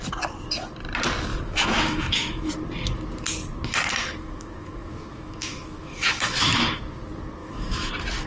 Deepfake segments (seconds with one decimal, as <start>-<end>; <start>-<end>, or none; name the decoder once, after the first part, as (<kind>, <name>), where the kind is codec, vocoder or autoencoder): 1.3-2.5 (autoencoder, DAC-VAE); 4.0-6.8; 7.4-7.9